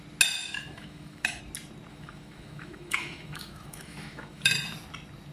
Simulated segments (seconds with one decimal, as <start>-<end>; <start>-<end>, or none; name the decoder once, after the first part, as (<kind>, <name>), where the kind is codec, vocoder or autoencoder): 0.4-1.4 (autoencoder, DAC-VAE); 1.9-4.5

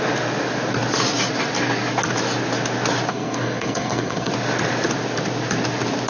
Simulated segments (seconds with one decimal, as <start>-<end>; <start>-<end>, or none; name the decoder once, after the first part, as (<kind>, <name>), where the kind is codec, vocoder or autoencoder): 3.1-4.3 (codec, SNAC)

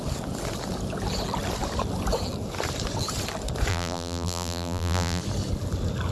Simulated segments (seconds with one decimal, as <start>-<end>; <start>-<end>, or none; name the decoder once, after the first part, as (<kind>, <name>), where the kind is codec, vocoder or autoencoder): 3.7-5.2 (vocoder, BigVGAN v2)

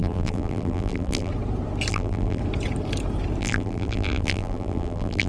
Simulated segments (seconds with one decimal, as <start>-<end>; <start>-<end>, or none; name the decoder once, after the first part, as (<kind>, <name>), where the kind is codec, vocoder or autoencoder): 0.0-1.3 (vocoder, BigVGAN v2); 1.9-2.4; 3.4-5.3

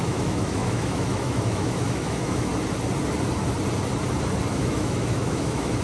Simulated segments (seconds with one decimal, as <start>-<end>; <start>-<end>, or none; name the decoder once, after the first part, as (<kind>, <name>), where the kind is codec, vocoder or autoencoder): 0.0-2.5 (autoencoder, DAC-VAE); 4.5-5.8

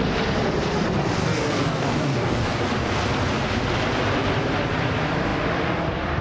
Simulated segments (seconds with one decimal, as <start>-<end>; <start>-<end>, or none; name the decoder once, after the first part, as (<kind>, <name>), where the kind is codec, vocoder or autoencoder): 1.2-2.6 (codec, DAC)

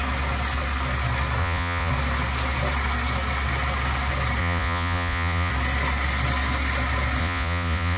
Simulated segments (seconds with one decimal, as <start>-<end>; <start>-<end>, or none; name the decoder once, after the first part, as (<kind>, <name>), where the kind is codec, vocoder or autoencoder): 1.4-1.9 (vocoder, Vocos); 4.4-5.5; 7.2-8.0